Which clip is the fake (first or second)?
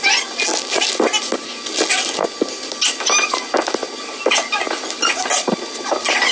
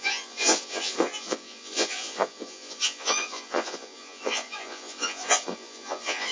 second